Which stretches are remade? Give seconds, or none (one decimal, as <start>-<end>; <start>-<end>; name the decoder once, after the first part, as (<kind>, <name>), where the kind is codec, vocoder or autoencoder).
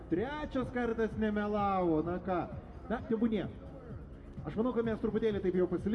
none